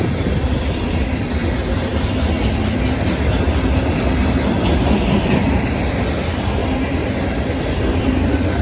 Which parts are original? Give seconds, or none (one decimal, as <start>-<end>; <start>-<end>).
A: 1.9-5.3; 6.6-7.7